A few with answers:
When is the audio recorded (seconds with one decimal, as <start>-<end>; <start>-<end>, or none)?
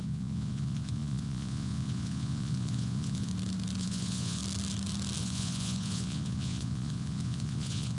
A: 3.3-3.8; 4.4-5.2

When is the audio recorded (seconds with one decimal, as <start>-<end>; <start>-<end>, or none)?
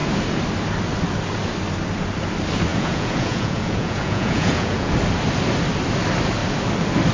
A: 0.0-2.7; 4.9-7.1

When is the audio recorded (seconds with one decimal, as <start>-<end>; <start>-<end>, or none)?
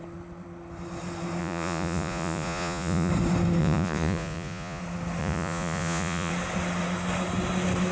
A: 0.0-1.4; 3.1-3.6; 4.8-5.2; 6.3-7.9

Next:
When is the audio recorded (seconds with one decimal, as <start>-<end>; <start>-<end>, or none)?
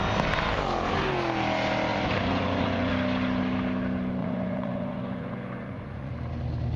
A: 0.0-1.9; 2.9-4.2; 6.1-6.8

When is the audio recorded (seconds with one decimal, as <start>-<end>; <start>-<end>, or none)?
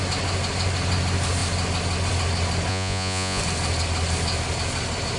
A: 0.0-2.7; 3.4-5.2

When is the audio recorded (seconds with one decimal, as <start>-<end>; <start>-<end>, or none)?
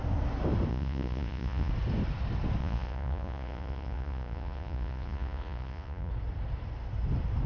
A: 0.0-0.7; 1.7-2.6; 6.1-7.5